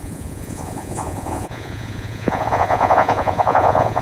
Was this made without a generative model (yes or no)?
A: no